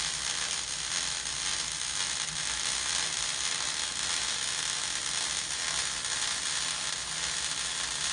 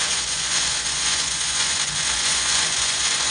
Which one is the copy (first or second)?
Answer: second